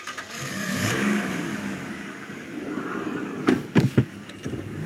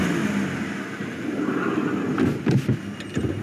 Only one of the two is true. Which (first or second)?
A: second